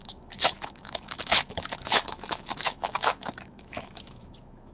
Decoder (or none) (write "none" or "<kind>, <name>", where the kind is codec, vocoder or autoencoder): autoencoder, DAC-VAE